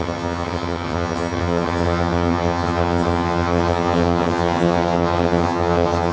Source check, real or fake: fake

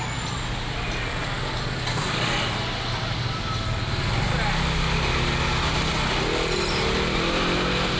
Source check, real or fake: real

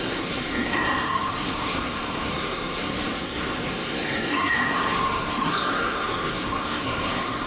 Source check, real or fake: fake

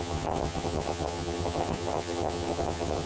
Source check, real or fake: fake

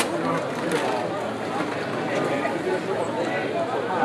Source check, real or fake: real